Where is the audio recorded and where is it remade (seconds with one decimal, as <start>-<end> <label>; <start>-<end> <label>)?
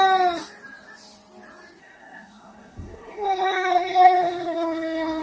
0.0-1.8 recorded; 1.8-5.2 remade